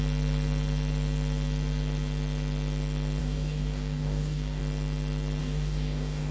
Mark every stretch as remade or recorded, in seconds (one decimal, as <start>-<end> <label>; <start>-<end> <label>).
0.0-3.2 recorded; 3.2-4.6 remade; 4.6-5.4 recorded; 5.4-6.3 remade